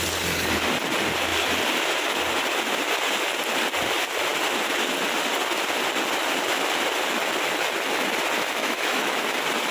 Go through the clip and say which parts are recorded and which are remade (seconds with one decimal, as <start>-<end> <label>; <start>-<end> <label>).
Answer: 0.0-8.6 recorded; 8.6-9.2 remade; 9.2-9.7 recorded